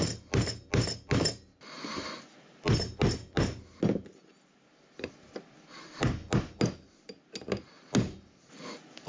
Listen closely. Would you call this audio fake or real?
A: real